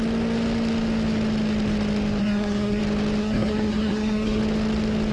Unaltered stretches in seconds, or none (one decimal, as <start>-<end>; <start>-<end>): 0.0-2.2; 2.8-3.2; 4.4-5.1